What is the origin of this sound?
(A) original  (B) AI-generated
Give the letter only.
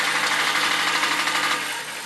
A